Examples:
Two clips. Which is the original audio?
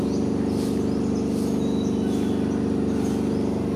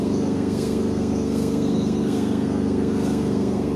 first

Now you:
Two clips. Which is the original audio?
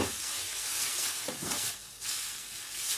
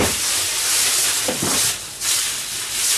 second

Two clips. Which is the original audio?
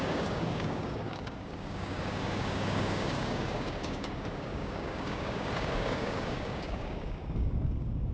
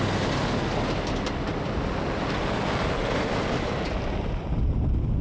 second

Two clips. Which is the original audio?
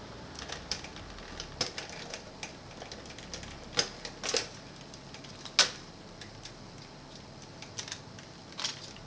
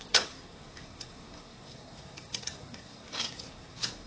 first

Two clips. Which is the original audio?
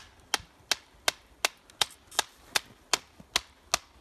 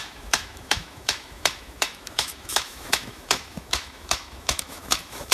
first